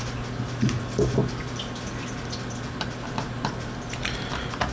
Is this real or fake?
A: real